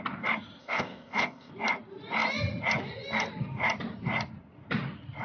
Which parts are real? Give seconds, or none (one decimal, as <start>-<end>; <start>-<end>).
0.0-0.6; 1.5-5.2